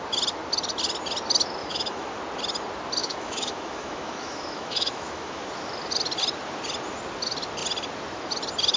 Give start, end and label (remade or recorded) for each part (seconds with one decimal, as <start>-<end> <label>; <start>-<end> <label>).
0.0-1.6 recorded; 1.6-2.2 remade; 2.2-3.0 recorded; 3.0-5.5 remade; 5.5-8.8 recorded